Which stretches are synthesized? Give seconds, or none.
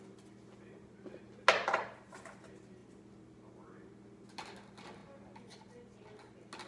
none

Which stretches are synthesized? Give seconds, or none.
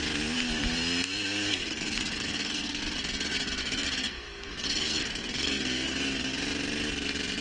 1.5-2.8 (codec, SNAC); 3.6-5.9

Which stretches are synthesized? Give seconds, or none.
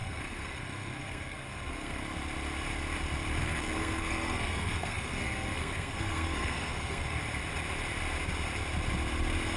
0.0-2.0 (codec, SNAC); 3.4-7.2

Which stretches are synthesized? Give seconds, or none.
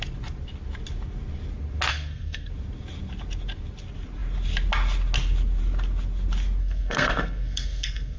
1.9-2.5 (codec, SNAC); 6.6-8.2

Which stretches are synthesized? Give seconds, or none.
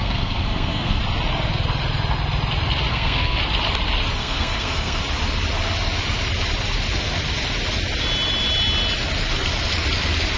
0.0-1.0 (codec, SNAC); 2.9-3.4; 4.2-5.0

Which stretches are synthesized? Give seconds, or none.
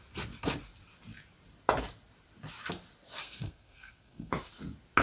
3.2-4.3 (codec, SNAC)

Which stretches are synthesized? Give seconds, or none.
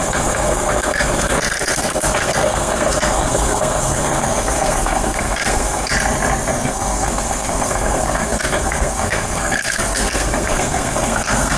0.0-5.9 (codec, SNAC); 6.5-11.6